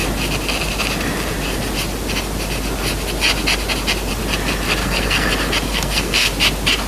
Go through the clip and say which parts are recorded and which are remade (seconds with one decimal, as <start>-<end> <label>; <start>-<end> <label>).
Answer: 0.0-4.8 recorded; 4.8-5.3 remade; 5.3-5.7 recorded; 5.7-6.3 remade; 6.3-6.9 recorded